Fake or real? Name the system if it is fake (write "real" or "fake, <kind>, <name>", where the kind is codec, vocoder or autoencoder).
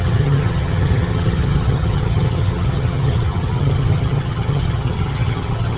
fake, vocoder, HiFi-GAN